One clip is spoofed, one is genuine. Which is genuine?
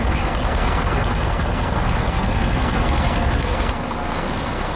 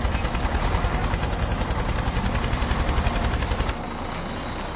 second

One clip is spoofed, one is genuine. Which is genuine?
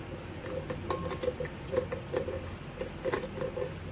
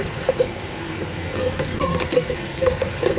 first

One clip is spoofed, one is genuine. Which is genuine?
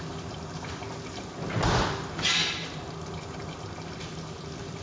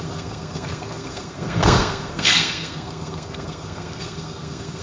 first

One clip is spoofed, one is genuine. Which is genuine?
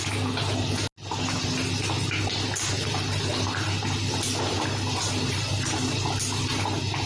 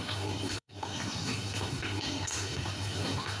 first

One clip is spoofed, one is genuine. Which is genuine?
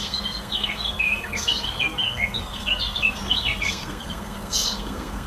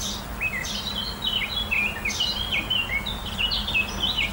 second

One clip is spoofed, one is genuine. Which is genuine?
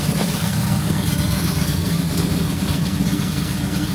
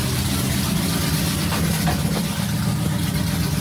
second